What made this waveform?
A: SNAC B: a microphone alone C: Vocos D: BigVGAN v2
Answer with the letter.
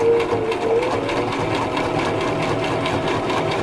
B